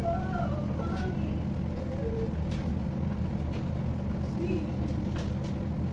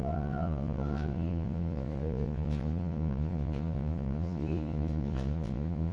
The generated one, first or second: second